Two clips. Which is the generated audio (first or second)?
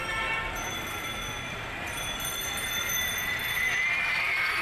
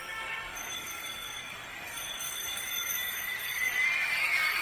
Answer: second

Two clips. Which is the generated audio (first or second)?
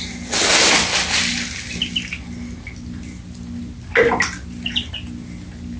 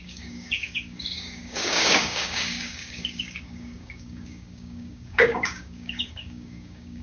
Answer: second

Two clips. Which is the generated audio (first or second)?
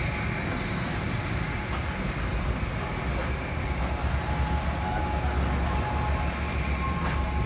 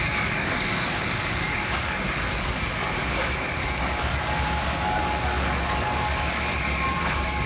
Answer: second